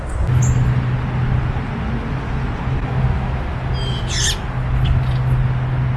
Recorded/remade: recorded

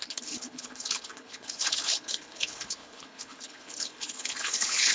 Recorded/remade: remade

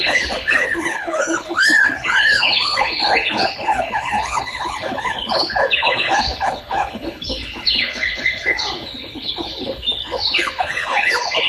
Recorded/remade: remade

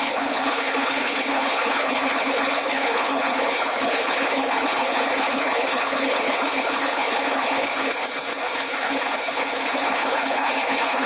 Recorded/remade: remade